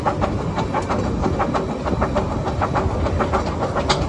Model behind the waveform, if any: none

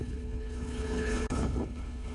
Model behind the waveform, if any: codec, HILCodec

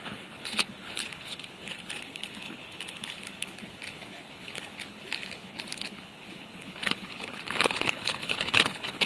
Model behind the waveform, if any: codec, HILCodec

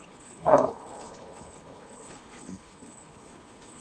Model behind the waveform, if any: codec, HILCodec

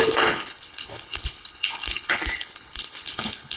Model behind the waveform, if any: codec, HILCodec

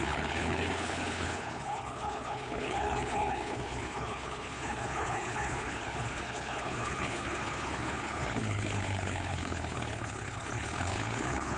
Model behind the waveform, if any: codec, HILCodec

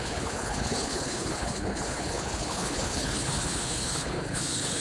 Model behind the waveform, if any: codec, HILCodec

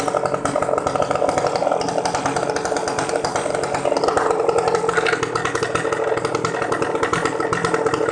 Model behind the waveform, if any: none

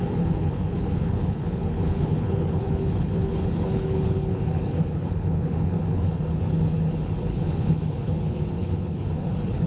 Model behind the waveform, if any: codec, HILCodec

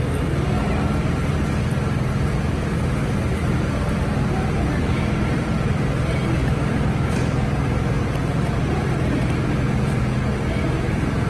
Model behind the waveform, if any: none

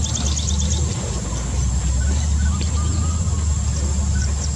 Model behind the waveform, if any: none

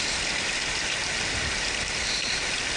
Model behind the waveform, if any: none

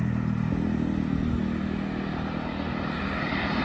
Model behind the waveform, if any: none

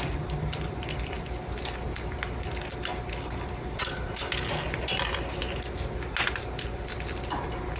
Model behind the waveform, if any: none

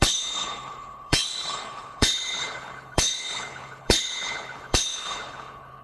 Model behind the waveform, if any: codec, HILCodec